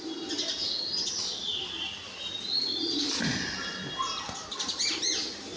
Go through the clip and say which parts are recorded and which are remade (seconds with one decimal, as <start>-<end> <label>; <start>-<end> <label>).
0.0-5.6 recorded